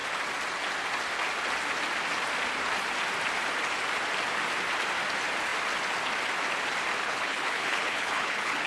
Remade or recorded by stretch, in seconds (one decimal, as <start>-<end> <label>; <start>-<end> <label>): 0.0-7.0 recorded; 7.0-8.7 remade